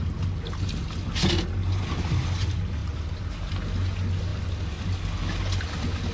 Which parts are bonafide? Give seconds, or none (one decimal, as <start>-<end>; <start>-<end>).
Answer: 0.0-2.8; 3.5-6.1